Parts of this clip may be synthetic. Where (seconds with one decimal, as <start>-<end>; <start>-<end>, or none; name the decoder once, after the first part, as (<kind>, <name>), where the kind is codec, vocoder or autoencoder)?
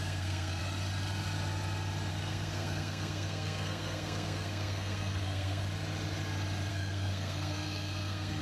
0.0-0.6 (codec, SNAC); 2.1-5.6; 6.7-8.4